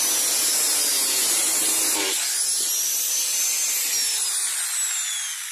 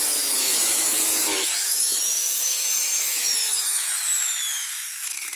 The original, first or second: first